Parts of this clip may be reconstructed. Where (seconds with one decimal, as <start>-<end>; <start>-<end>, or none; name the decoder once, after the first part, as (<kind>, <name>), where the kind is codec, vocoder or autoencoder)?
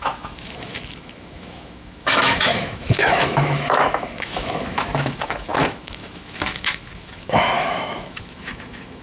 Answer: 0.0-9.0 (autoencoder, DAC-VAE)